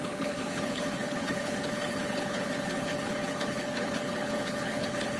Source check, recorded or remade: remade